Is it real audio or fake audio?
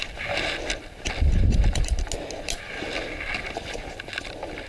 real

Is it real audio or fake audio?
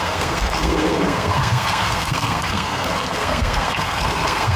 fake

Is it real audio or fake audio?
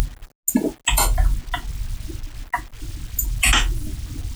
real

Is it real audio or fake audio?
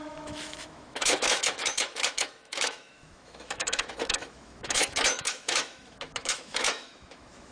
fake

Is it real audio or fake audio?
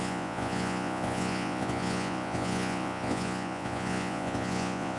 fake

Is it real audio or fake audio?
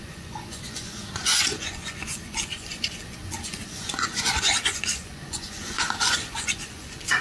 fake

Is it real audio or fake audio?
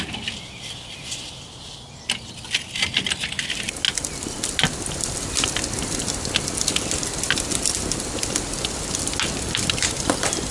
real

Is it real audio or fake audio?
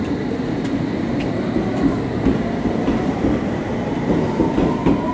real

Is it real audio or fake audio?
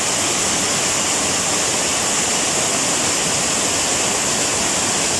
real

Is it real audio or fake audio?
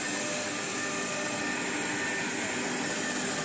real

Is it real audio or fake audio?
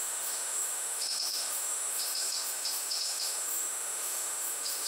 fake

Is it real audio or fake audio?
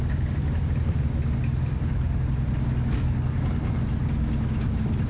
real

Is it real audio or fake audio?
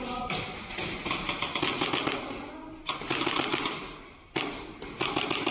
real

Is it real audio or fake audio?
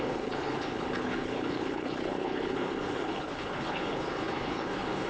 fake